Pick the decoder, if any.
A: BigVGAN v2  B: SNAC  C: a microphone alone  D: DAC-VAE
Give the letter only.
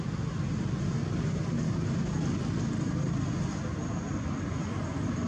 C